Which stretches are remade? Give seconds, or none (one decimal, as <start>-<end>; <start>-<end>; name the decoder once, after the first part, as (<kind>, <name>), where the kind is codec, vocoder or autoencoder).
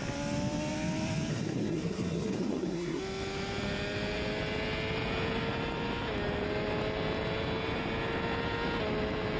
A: 1.3-3.0 (codec, SNAC)